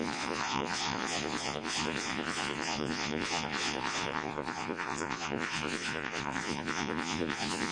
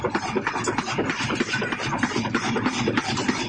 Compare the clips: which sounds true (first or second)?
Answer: second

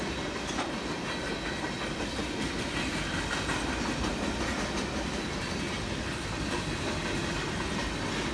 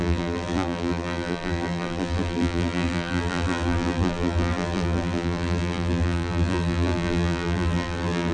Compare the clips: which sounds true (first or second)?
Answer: first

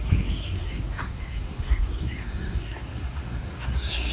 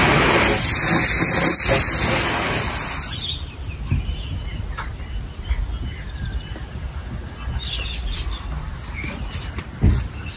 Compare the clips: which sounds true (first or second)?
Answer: second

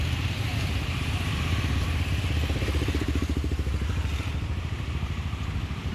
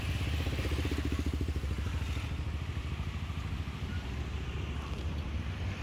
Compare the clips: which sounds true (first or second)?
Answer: second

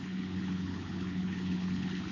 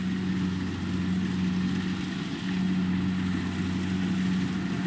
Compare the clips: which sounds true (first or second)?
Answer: second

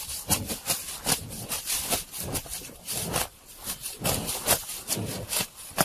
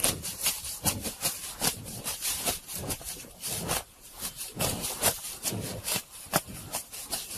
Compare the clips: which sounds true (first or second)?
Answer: first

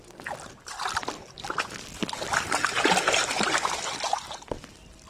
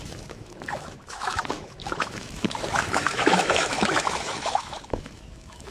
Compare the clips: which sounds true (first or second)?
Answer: first